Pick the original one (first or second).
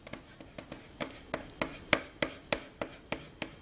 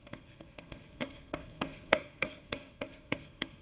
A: first